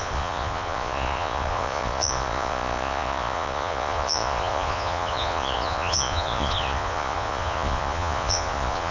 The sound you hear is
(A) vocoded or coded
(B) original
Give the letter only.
A